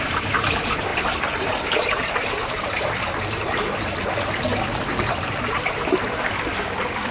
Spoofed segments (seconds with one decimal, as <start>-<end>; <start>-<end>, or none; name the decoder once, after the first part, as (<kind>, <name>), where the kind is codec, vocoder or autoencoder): 0.0-4.5 (vocoder, BigVGAN v2); 5.4-7.1